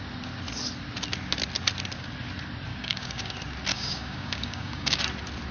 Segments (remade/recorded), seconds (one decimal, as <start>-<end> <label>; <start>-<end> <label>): 0.0-2.7 recorded; 2.7-3.3 remade; 3.3-3.7 recorded; 3.7-5.0 remade; 5.0-5.5 recorded